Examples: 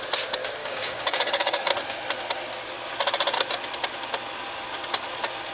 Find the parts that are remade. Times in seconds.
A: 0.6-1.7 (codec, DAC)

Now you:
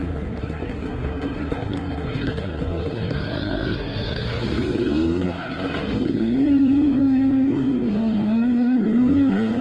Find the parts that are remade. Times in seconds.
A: 0.0-9.6 (codec, SNAC)